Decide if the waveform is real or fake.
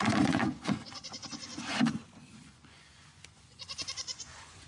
fake